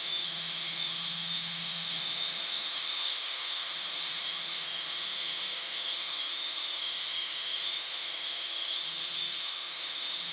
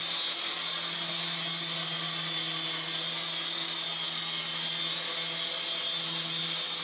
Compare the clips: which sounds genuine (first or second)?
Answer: second